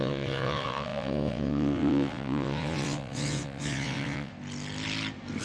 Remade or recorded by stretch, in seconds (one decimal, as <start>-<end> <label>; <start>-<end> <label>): 0.0-4.3 remade; 4.3-5.4 recorded